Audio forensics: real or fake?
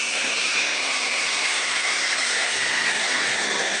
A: fake